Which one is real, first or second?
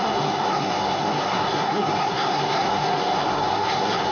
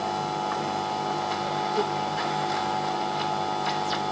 second